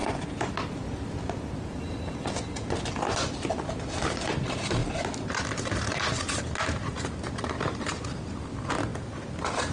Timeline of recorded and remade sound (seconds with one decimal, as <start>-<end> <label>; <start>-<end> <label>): 0.0-4.8 remade; 4.8-5.4 recorded; 5.4-8.9 remade; 8.9-9.7 recorded